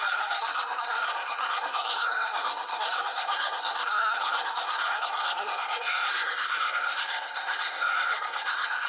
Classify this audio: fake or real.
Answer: fake